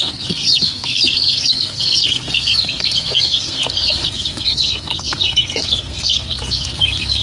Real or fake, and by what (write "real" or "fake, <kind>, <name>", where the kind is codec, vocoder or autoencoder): fake, codec, SNAC